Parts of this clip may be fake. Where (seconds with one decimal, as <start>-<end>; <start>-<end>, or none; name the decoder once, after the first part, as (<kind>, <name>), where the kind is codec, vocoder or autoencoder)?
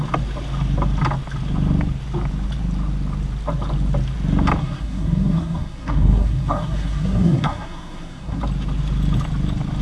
4.6-8.4 (codec, SNAC)